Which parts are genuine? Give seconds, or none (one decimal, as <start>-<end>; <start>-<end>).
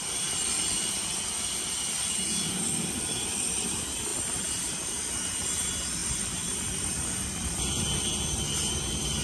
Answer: 0.0-9.2